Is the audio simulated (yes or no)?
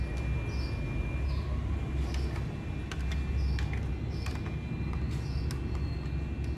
no